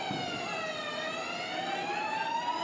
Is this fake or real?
real